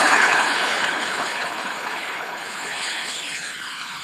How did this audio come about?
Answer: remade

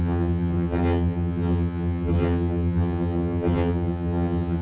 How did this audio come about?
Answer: remade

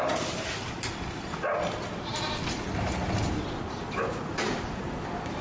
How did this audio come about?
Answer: recorded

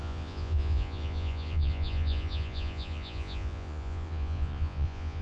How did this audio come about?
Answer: remade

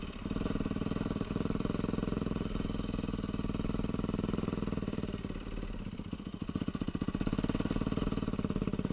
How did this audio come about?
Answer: remade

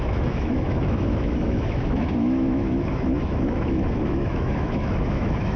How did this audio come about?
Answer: remade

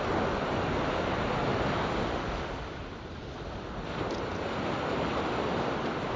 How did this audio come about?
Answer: recorded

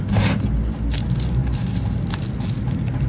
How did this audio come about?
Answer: recorded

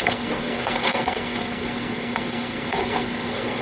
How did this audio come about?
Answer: remade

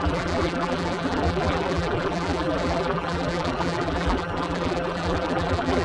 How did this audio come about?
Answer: remade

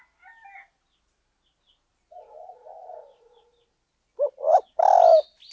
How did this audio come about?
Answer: recorded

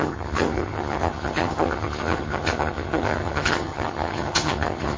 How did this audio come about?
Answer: remade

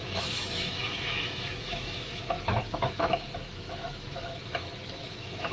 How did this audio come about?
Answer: remade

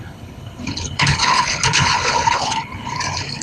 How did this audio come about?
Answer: remade